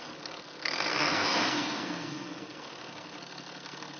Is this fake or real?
fake